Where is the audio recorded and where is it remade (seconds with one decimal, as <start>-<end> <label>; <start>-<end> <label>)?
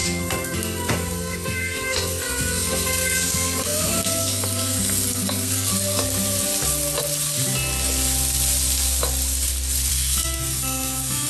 0.0-5.7 remade; 5.7-9.9 recorded; 9.9-11.3 remade